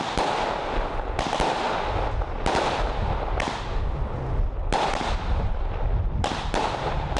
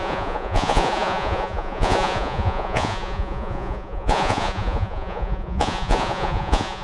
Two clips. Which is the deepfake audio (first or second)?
second